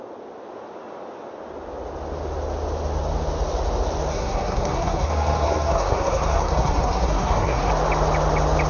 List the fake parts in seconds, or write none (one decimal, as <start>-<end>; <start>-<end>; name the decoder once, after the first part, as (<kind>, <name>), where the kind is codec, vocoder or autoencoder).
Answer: 4.1-7.7 (codec, SNAC)